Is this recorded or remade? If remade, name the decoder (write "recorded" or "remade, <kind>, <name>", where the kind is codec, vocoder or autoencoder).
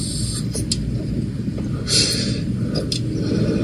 recorded